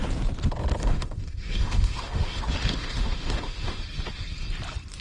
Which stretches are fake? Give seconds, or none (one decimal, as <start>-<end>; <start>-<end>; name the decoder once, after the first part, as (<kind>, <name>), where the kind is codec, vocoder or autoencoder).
0.8-3.8 (autoencoder, DAC-VAE)